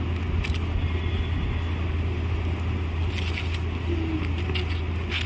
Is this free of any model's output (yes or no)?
yes